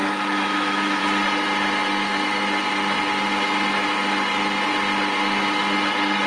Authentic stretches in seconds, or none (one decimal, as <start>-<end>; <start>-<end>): 1.0-6.3